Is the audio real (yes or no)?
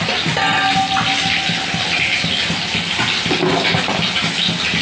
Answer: yes